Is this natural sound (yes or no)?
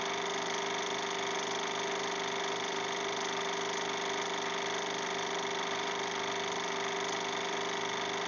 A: yes